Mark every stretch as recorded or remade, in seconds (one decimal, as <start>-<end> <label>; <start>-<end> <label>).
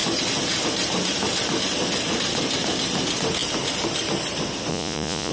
0.0-4.7 recorded; 4.7-5.3 remade